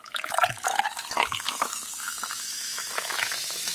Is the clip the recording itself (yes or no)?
no